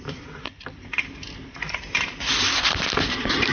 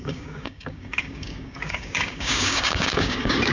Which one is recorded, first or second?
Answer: first